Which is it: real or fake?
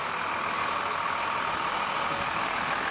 real